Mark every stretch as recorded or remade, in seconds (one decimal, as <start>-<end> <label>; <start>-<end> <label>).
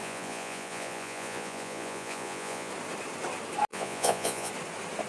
0.0-2.7 remade; 2.7-3.7 recorded; 3.7-4.5 remade; 4.5-5.1 recorded